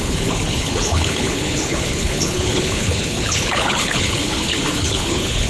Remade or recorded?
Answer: remade